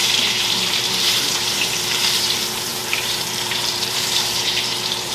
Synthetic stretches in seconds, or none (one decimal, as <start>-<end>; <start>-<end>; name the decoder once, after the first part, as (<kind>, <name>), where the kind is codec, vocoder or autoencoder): 0.0-5.1 (vocoder, BigVGAN v2)